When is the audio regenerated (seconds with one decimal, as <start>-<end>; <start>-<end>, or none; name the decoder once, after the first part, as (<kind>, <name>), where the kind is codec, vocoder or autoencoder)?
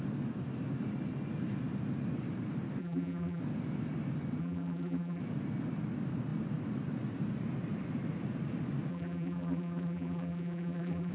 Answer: 2.8-3.4 (vocoder, BigVGAN v2); 4.4-5.2; 8.9-11.1